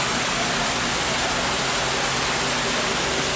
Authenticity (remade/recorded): recorded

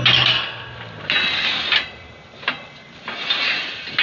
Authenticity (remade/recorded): recorded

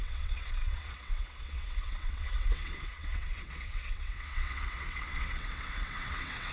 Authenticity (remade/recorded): remade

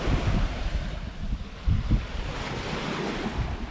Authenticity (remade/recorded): recorded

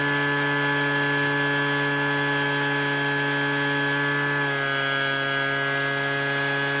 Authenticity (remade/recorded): recorded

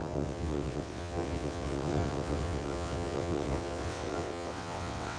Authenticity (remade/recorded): remade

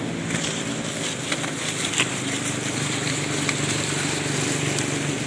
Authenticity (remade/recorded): recorded